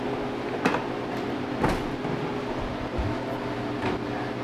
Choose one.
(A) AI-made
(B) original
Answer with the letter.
B